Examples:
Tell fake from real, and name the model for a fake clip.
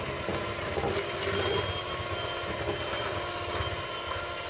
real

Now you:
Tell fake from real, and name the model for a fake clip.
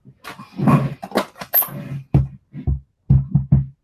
real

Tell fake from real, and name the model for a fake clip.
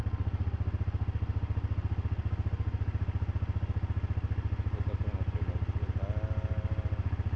real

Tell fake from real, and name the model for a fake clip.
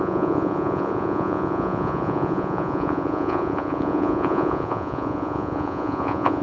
fake, vocoder, Vocos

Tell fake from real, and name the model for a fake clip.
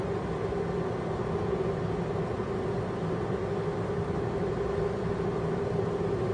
real